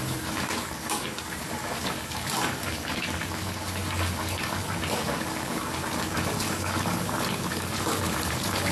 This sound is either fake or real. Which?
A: fake